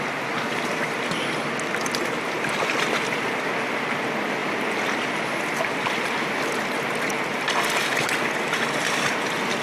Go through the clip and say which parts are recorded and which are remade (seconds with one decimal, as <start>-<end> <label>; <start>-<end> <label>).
0.0-9.6 recorded